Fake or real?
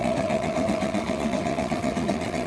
fake